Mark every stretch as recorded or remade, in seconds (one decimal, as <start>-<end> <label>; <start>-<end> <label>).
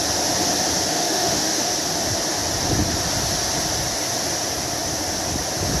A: 0.0-0.9 recorded; 0.9-1.7 remade; 1.7-5.8 recorded